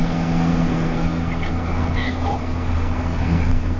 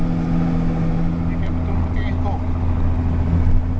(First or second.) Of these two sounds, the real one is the second